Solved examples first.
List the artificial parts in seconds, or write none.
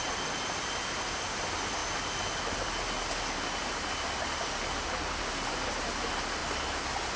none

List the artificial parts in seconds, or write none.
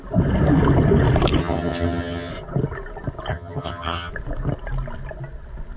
1.4-2.3 (vocoder, HiFi-GAN); 3.3-4.1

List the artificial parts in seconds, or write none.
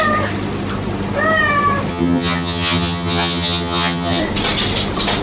1.9-4.2 (vocoder, HiFi-GAN)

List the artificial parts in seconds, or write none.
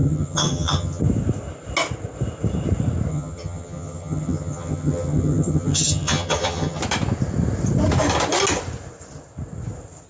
0.0-1.0 (vocoder, HiFi-GAN); 3.1-6.8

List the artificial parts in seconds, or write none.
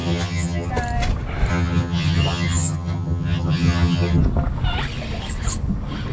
0.0-0.7 (vocoder, HiFi-GAN); 1.5-4.2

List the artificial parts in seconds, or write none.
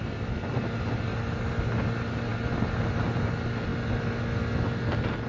none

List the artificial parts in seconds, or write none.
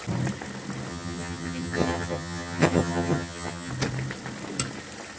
0.9-3.7 (vocoder, HiFi-GAN)